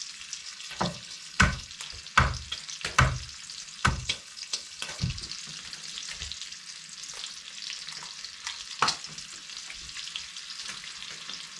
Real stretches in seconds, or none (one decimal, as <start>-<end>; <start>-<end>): 0.0-0.4; 1.7-3.8; 5.1-11.6